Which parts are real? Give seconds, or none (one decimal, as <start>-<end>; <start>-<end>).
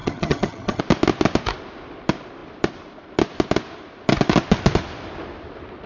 0.8-5.9